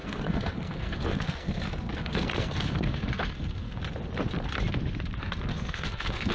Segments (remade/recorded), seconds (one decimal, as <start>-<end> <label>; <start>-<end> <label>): 0.0-3.8 remade; 3.8-5.5 recorded; 5.5-6.3 remade